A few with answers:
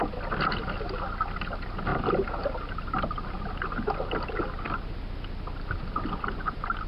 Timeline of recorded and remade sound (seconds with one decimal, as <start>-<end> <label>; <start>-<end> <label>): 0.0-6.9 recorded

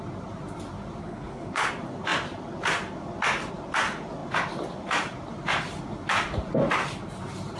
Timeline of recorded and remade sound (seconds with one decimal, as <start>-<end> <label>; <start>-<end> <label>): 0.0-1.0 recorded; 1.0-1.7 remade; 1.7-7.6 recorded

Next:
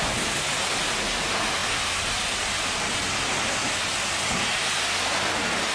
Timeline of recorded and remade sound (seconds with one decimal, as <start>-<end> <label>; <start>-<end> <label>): 0.0-5.7 recorded

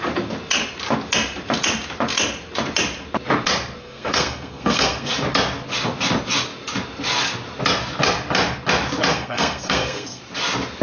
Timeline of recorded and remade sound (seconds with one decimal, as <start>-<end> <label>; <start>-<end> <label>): 0.0-3.8 recorded; 3.8-5.1 remade; 5.1-9.1 recorded; 9.1-10.2 remade; 10.2-10.8 recorded

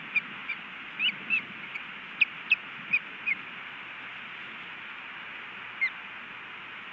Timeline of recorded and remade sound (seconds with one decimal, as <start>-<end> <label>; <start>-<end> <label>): 0.0-0.4 recorded; 0.4-4.5 remade; 4.5-6.9 recorded

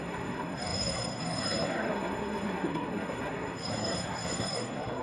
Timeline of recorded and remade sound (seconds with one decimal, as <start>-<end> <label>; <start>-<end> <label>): 0.0-5.0 remade

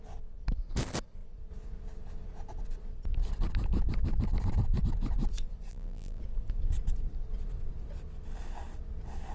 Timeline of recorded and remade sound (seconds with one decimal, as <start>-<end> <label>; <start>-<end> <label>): 0.0-5.7 recorded; 5.7-6.2 remade; 6.2-9.3 recorded